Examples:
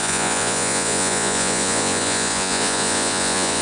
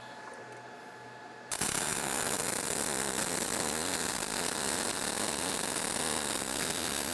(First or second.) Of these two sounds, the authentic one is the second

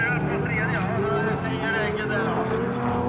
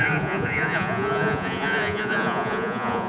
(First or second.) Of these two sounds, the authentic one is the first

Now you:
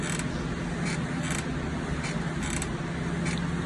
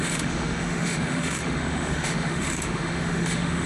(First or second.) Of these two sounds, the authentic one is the first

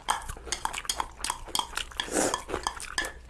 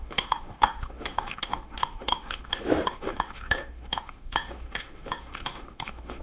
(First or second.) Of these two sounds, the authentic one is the first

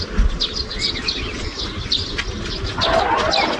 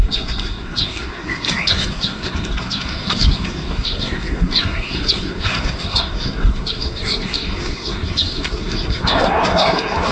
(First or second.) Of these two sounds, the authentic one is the first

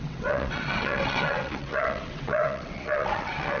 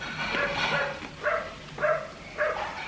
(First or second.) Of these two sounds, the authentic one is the second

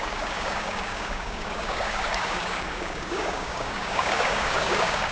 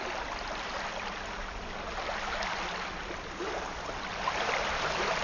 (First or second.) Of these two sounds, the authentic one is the second